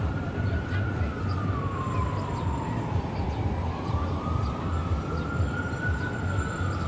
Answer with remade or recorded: remade